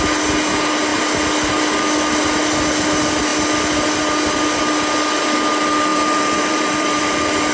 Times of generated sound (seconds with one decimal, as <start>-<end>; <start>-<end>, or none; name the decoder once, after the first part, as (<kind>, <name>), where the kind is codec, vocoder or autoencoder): 5.9-7.0 (vocoder, BigVGAN v2)